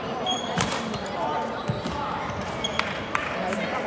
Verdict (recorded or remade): remade